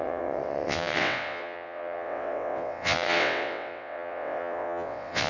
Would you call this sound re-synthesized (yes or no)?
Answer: yes